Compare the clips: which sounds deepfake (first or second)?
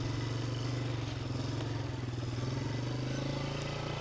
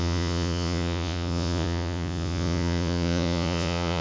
second